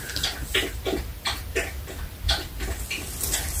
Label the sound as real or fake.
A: real